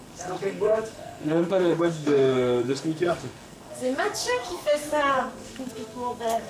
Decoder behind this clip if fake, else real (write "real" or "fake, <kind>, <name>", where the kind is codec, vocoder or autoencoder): fake, codec, SNAC